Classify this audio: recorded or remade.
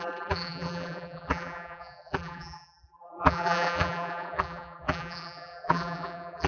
remade